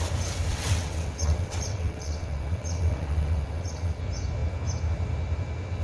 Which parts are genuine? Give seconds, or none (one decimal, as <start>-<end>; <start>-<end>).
0.0-0.5; 4.0-5.8